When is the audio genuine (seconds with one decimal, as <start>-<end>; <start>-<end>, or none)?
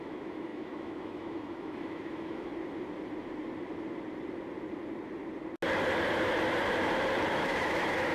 2.5-7.3